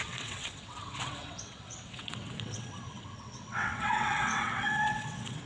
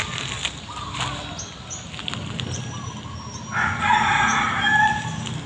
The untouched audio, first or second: second